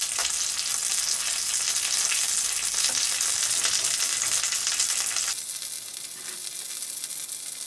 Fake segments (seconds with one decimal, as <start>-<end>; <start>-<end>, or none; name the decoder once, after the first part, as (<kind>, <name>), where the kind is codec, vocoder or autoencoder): none